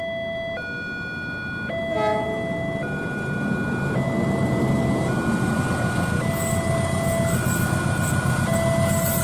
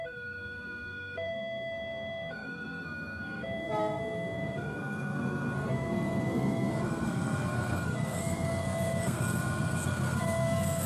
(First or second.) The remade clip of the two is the second